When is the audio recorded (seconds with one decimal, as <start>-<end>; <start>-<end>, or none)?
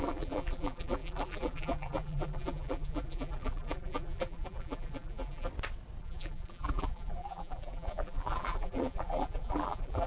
5.5-6.0